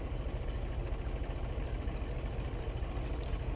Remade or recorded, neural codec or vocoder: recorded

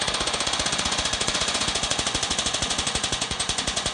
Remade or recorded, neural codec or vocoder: remade, vocoder, Vocos